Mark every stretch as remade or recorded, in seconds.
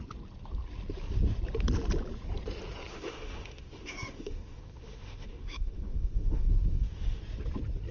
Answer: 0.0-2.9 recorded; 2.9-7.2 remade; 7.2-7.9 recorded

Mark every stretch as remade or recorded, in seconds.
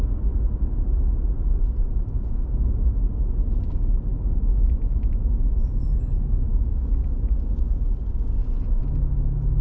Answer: 0.0-1.9 recorded; 1.9-2.5 remade; 2.5-4.1 recorded; 4.1-6.9 remade; 6.9-8.8 recorded; 8.8-9.6 remade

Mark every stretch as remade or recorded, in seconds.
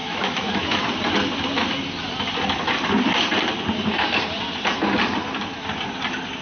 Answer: 0.0-0.8 remade; 0.8-6.4 recorded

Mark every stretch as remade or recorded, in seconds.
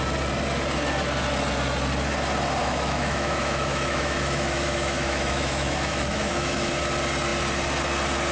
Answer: 0.0-2.6 recorded; 2.6-6.7 remade; 6.7-8.3 recorded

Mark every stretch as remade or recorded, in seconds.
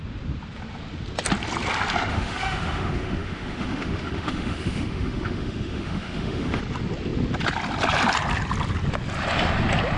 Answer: 0.0-2.1 recorded; 2.1-6.6 remade; 6.6-10.0 recorded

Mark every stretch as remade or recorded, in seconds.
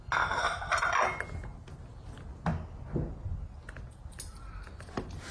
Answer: 0.0-5.3 recorded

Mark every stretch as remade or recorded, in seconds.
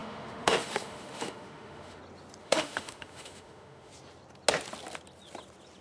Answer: 0.0-2.0 remade; 2.0-2.4 recorded; 2.4-3.9 remade; 3.9-5.8 recorded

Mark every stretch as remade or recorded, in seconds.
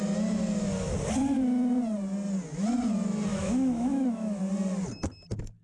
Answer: 0.0-3.3 recorded; 3.3-4.4 remade; 4.4-5.6 recorded